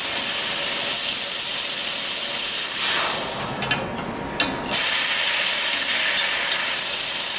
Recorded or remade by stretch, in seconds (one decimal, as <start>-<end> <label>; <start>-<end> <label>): 0.0-7.4 recorded